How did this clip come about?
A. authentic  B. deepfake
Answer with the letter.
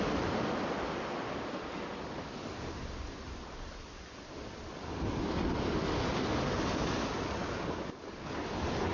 A